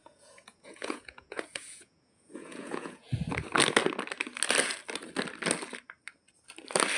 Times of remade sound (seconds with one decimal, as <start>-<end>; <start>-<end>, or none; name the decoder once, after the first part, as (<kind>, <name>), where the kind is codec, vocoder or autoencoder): 0.0-3.1 (vocoder, Vocos)